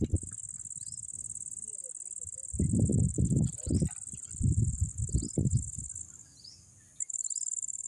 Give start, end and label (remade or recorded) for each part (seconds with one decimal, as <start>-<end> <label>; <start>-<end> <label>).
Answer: 0.0-2.9 recorded; 2.9-5.0 remade; 5.0-7.9 recorded